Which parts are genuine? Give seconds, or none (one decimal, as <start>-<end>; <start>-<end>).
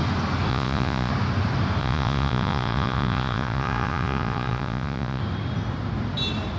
0.0-0.5; 1.1-1.8; 5.2-6.6